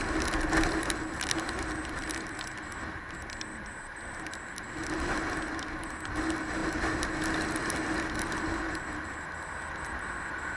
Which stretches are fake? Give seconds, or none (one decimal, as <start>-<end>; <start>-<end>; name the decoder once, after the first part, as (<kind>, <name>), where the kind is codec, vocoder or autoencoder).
none